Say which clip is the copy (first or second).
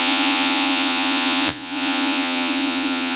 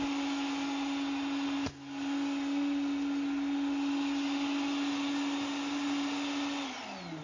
first